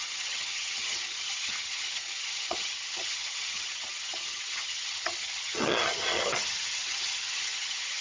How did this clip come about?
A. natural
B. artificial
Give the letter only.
B